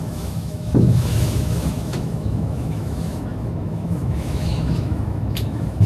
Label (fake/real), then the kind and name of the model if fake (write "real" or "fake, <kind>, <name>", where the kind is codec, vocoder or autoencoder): fake, autoencoder, DAC-VAE